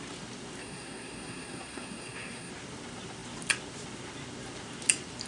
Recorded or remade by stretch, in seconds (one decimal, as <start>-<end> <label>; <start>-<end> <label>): 0.0-0.6 recorded; 0.6-2.5 remade; 2.5-5.3 recorded